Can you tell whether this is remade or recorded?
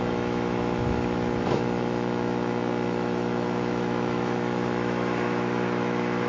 remade